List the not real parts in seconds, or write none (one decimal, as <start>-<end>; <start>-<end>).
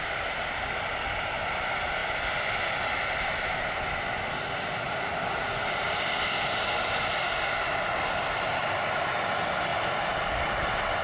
0.0-11.0